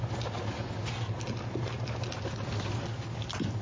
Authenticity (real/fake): real